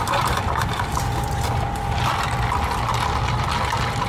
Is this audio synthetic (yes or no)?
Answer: no